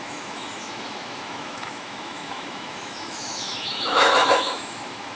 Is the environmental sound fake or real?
fake